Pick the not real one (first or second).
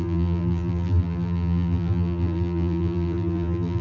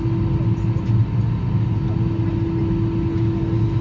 first